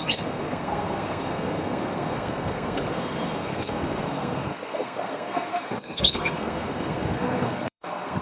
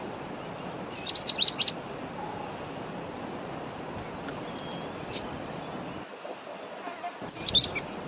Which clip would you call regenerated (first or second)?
first